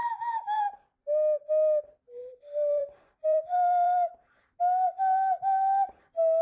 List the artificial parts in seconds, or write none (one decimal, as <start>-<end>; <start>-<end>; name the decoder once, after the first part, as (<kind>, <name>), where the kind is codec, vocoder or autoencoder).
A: 0.0-0.6 (vocoder, BigVGAN v2); 2.2-4.5